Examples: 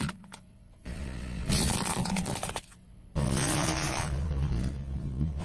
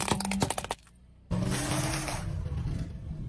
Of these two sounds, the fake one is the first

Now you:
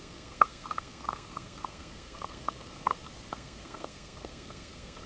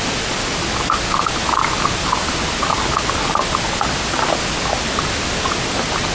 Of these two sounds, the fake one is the first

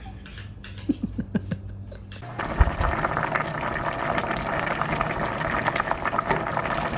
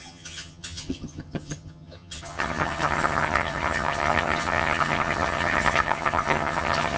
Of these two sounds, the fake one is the second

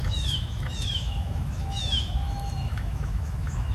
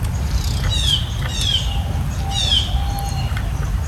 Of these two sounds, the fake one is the first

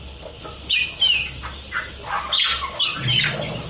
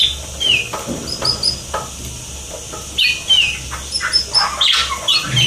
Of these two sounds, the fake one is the first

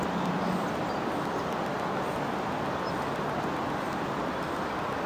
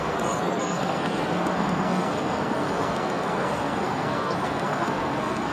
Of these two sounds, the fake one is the second